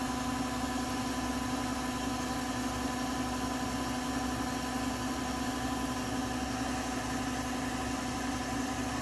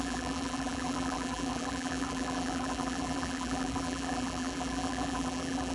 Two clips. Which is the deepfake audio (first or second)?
second